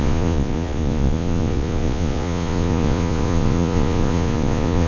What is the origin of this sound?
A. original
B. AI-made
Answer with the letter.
B